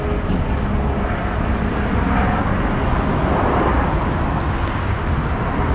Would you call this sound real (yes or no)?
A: yes